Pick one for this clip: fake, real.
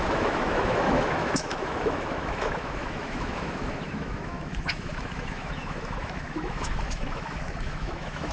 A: fake